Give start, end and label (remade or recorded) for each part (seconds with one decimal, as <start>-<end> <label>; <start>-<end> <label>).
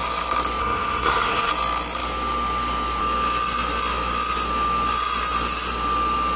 0.0-0.6 recorded; 0.6-1.5 remade; 1.5-6.4 recorded